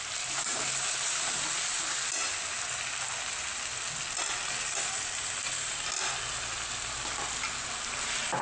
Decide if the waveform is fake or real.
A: real